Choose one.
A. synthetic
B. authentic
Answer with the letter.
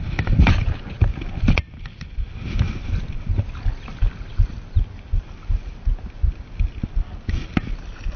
B